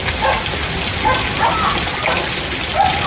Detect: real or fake real